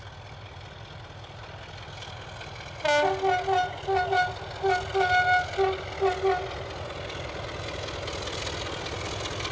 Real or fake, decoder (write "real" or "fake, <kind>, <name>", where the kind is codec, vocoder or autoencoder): real